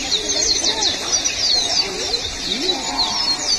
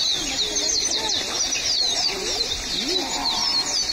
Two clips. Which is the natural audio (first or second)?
second